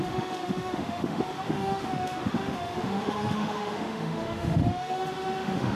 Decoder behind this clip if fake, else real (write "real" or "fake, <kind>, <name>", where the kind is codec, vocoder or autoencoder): fake, autoencoder, DAC-VAE